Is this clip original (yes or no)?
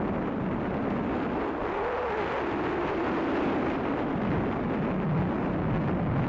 yes